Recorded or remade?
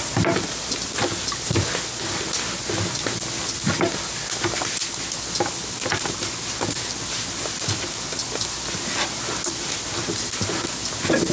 recorded